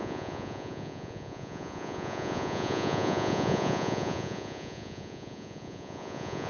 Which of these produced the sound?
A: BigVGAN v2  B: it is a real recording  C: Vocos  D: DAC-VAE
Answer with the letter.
C